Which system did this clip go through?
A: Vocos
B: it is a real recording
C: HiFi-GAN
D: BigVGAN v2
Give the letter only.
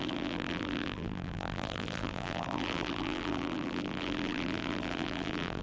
D